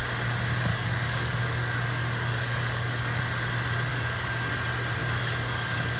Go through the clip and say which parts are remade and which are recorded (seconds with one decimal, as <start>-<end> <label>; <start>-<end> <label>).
0.0-0.7 recorded; 0.7-3.2 remade; 3.2-3.9 recorded; 3.9-4.5 remade; 4.5-5.0 recorded; 5.0-6.0 remade